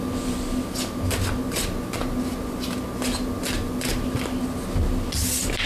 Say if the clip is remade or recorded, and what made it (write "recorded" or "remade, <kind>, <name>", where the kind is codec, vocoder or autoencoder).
recorded